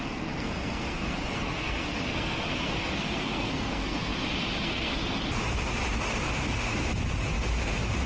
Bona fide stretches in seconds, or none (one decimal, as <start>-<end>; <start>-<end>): 4.1-4.6; 5.2-8.1

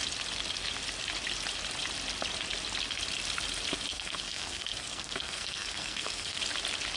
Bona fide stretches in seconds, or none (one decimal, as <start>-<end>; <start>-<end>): 0.0-3.9; 6.4-7.0

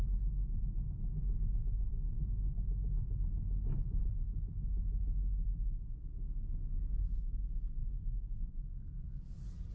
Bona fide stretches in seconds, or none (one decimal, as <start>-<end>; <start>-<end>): 0.0-1.9; 2.5-7.8; 8.5-9.7